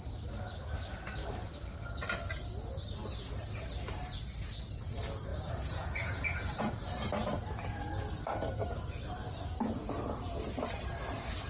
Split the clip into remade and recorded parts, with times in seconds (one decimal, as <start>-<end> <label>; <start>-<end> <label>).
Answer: 0.0-5.3 recorded; 5.3-6.6 remade; 6.6-11.5 recorded